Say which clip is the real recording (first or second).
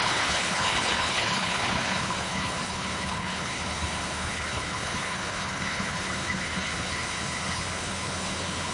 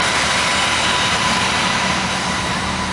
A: second